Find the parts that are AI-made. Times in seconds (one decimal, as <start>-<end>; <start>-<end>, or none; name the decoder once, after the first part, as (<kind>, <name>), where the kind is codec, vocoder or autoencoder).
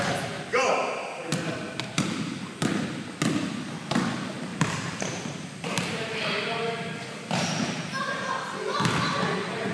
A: 4.5-7.8 (vocoder, BigVGAN v2)